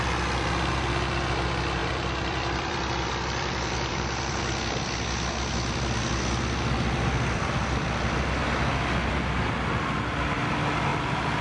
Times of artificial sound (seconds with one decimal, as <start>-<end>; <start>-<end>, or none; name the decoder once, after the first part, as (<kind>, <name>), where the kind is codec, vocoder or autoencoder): 1.8-4.4 (vocoder, BigVGAN v2); 10.9-11.4